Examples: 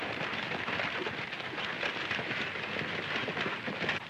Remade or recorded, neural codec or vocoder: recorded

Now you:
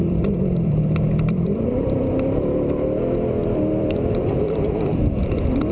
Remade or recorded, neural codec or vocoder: remade, vocoder, BigVGAN v2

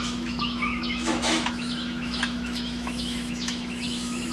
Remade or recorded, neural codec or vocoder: remade, autoencoder, DAC-VAE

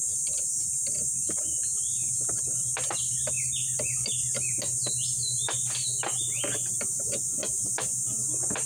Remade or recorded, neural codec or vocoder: recorded